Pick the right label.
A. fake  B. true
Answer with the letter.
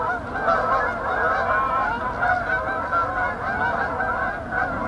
B